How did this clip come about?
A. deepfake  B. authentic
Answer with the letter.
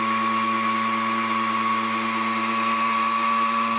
B